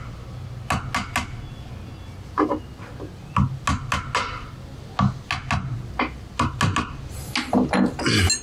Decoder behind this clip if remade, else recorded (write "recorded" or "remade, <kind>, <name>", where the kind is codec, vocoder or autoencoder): recorded